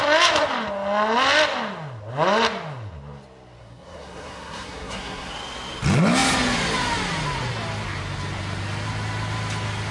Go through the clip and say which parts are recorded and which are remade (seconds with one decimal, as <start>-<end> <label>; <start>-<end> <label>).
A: 0.0-3.6 recorded; 3.6-5.3 remade; 5.3-9.9 recorded